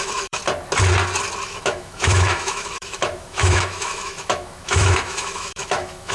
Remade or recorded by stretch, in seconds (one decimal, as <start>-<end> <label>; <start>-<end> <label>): 0.0-0.4 remade; 0.4-1.5 recorded; 1.5-6.1 remade